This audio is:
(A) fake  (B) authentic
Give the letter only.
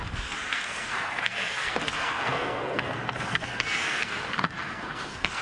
A